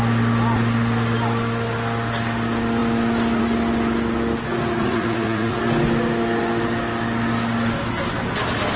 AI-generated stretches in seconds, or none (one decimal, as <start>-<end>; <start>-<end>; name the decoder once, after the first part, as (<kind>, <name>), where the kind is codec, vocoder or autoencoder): 4.8-5.6 (vocoder, Vocos)